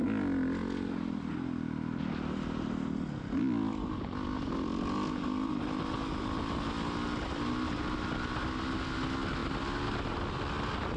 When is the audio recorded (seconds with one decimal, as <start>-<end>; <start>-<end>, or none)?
0.0-11.0